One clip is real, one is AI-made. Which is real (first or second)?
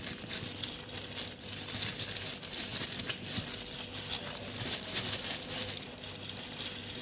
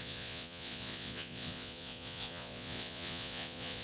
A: first